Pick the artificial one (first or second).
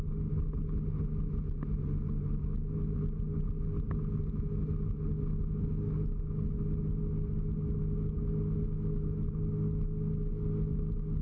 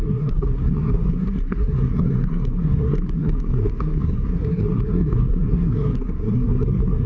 second